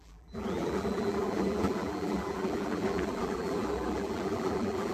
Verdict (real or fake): fake